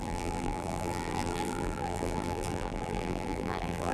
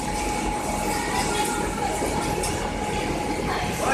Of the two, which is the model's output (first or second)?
first